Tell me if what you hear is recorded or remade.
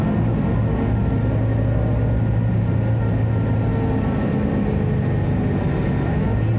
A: recorded